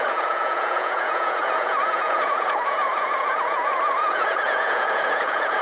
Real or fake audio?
fake